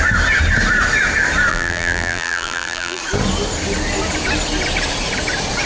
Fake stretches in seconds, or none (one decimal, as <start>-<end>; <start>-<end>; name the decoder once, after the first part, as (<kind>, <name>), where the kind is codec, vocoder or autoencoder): 1.5-3.0 (vocoder, BigVGAN v2)